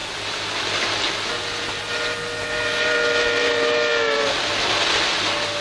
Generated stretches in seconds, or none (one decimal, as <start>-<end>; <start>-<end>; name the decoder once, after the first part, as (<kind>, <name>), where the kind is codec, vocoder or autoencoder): none